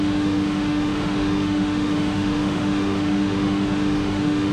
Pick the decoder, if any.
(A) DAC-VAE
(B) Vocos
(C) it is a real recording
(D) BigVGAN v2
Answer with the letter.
A